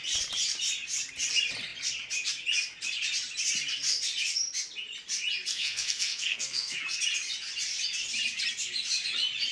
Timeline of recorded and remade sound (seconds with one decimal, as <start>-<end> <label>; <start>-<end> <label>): 0.0-5.5 recorded; 5.5-6.8 remade; 6.8-9.5 recorded